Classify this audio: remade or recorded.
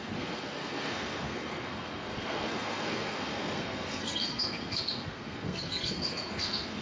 remade